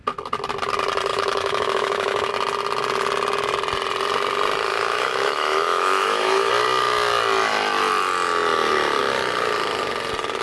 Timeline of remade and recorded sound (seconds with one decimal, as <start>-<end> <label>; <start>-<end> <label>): 0.0-1.1 recorded; 1.1-2.3 remade; 2.3-4.7 recorded; 4.7-6.5 remade; 6.5-10.4 recorded